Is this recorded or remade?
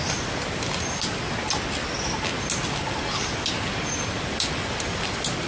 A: recorded